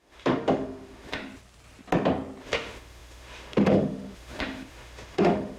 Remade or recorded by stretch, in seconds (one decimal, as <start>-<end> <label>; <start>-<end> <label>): 0.0-1.2 remade; 1.2-2.4 recorded; 2.4-5.6 remade